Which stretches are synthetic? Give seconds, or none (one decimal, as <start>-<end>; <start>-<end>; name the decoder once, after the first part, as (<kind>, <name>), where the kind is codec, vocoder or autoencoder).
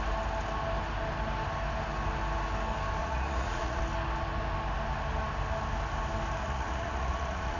3.0-3.8 (vocoder, Vocos); 6.4-7.6